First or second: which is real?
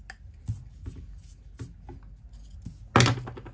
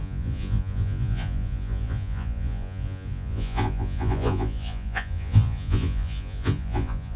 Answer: first